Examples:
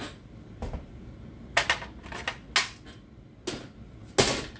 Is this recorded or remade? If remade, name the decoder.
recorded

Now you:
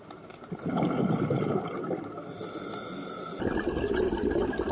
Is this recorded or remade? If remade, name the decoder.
recorded